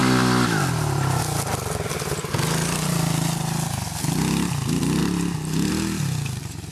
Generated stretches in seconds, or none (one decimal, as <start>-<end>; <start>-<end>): 0.0-1.2; 5.0-5.7